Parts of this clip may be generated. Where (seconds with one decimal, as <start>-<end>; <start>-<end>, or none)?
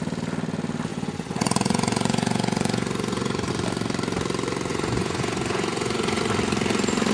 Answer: 0.9-3.5; 4.7-6.2